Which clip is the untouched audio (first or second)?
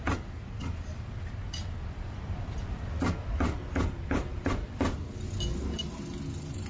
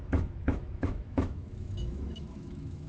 first